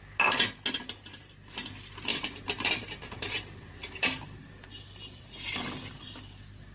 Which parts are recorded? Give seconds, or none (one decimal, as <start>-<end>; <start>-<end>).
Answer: 0.0-2.1; 5.6-6.7